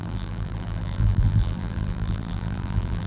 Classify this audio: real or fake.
fake